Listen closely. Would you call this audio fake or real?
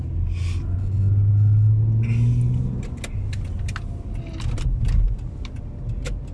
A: real